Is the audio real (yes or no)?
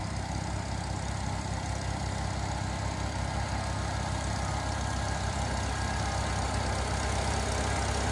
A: yes